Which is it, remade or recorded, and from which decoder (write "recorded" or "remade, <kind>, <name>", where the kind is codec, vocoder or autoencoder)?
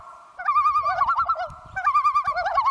recorded